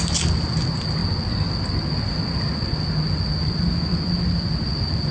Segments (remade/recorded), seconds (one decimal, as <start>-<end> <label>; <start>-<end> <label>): 0.0-5.1 recorded